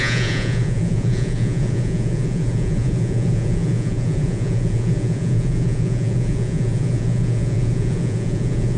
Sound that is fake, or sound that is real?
fake